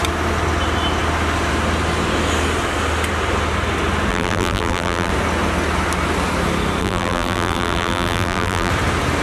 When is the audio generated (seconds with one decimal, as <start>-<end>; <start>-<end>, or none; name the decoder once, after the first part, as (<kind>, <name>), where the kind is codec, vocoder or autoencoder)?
4.1-5.1 (vocoder, BigVGAN v2); 6.8-8.7